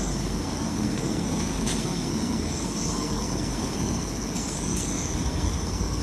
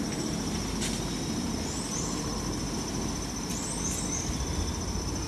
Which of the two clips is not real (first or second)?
first